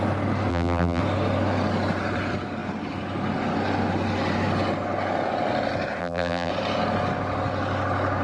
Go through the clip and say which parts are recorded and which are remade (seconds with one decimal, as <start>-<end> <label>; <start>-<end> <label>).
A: 0.0-0.5 recorded; 0.5-1.0 remade; 1.0-6.0 recorded; 6.0-6.5 remade; 6.5-8.2 recorded